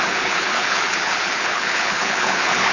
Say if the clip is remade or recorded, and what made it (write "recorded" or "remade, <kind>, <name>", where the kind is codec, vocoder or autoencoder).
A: remade, codec, HILCodec